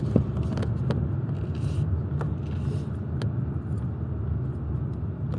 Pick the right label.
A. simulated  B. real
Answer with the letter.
B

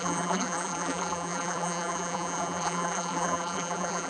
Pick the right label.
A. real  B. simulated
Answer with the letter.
B